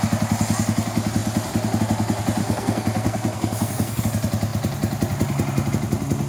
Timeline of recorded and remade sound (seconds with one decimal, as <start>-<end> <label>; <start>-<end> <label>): 0.0-2.4 recorded; 2.4-4.0 remade; 4.0-6.3 recorded